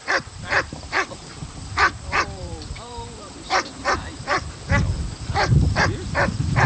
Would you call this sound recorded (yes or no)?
no